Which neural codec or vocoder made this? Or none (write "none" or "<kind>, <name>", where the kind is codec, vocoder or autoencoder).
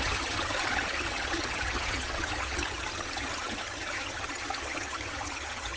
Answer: vocoder, HiFi-GAN